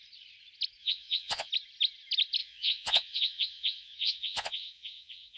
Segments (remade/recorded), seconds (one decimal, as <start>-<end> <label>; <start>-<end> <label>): 0.0-0.8 recorded; 0.8-1.5 remade; 1.5-2.4 recorded; 2.4-5.4 remade